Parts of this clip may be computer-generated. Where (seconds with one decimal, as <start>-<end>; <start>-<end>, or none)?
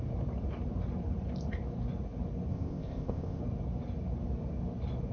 2.5-3.4